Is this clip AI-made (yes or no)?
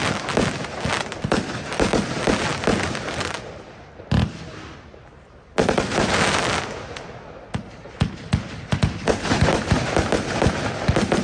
no